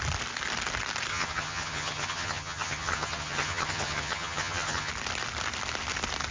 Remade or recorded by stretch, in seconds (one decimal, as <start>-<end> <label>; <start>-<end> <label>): 0.0-1.1 recorded; 1.1-4.9 remade; 4.9-6.3 recorded